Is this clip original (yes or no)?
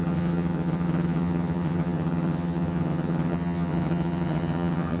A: no